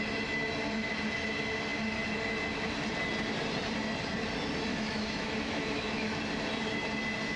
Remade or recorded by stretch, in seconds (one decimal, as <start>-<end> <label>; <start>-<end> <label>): 0.0-4.7 recorded; 4.7-6.2 remade; 6.2-7.4 recorded